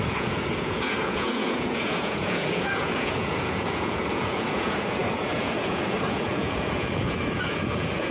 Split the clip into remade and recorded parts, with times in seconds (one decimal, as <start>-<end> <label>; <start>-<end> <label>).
0.0-8.1 remade